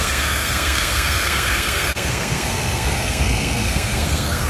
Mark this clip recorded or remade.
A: remade